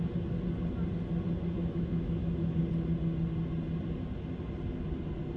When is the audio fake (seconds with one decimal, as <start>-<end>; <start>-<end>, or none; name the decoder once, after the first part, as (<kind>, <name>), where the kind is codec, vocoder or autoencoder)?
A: 1.6-2.6 (autoencoder, DAC-VAE)